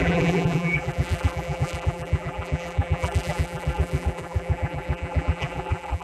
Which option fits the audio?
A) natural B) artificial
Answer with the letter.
B